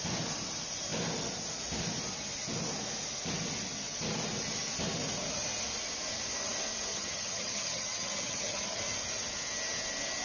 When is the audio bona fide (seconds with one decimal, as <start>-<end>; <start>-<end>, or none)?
0.0-6.9; 8.8-10.2